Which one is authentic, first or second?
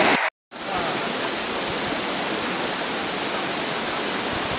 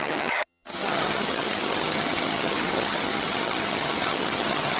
first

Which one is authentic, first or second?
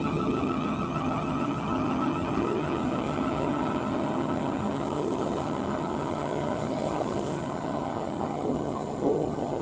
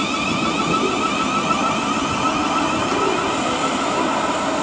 second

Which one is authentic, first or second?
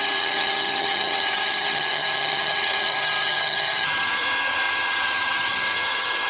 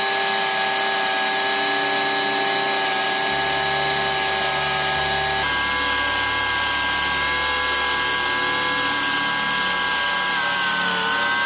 second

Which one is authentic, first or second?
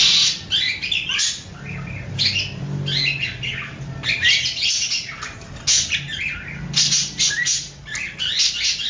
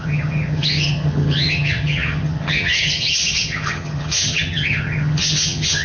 first